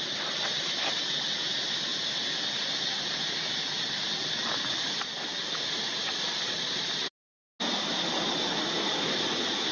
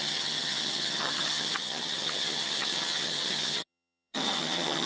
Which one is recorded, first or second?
first